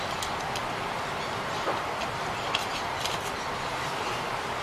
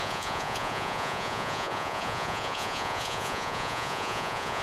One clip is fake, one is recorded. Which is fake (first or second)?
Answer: second